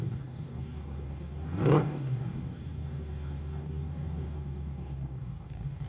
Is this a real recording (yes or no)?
no